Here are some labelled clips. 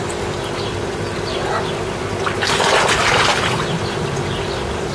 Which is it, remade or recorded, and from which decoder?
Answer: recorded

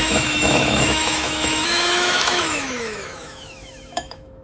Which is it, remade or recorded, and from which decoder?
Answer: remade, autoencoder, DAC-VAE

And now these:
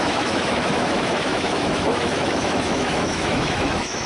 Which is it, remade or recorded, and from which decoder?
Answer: remade, autoencoder, DAC-VAE